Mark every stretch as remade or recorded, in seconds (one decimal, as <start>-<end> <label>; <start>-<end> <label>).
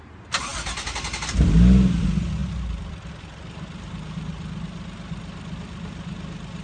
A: 0.0-6.6 recorded